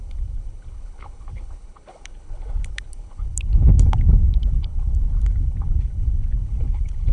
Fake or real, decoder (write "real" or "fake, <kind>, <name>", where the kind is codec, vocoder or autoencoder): fake, codec, HILCodec